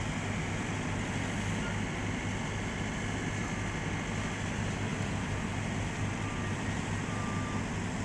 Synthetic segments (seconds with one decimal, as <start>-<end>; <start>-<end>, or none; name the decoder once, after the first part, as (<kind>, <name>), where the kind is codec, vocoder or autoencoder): 4.9-7.6 (vocoder, BigVGAN v2)